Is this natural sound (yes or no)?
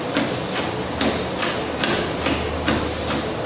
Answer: yes